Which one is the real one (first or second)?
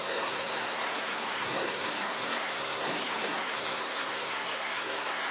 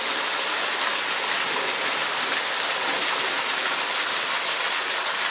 second